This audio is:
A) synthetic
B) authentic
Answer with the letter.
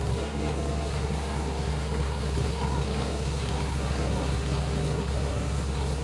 A